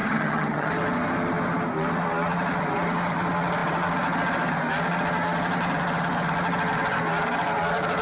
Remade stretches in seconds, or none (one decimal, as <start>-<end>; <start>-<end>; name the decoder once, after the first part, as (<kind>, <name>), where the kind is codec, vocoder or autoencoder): 0.0-0.7 (vocoder, HiFi-GAN)

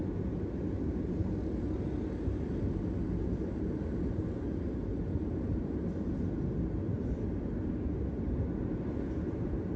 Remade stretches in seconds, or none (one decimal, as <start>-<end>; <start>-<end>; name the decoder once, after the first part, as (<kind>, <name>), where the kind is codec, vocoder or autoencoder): 5.5-6.1 (vocoder, BigVGAN v2)

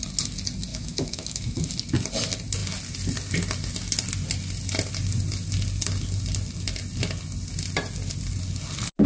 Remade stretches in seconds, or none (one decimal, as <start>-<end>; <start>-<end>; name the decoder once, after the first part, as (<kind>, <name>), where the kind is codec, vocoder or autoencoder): 0.7-1.7 (autoencoder, DAC-VAE)